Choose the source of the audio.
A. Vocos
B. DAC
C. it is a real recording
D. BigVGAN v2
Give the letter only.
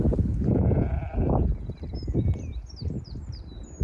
C